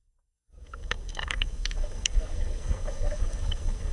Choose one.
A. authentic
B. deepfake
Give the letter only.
B